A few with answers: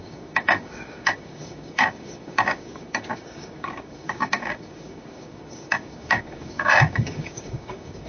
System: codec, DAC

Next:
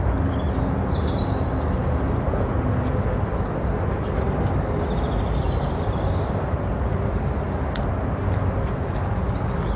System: none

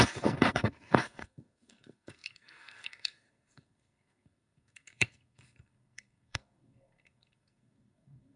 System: codec, SNAC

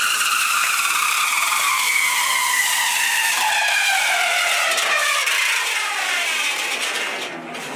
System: vocoder, BigVGAN v2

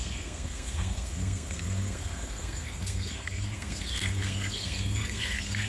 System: codec, SNAC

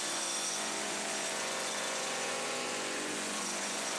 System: vocoder, Vocos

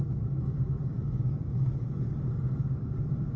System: codec, DAC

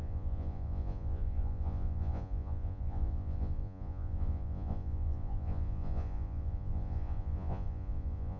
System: vocoder, Vocos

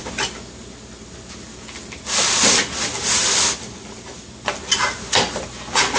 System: none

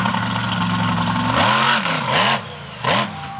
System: none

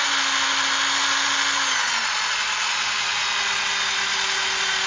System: none